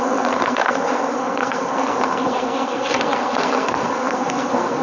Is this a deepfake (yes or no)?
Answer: yes